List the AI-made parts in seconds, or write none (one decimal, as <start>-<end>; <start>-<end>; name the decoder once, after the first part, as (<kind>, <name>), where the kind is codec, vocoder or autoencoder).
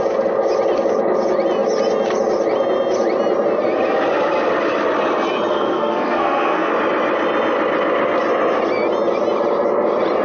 5.5-6.7 (codec, SNAC)